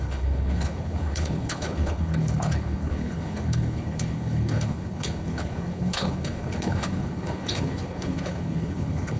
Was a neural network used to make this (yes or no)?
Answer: yes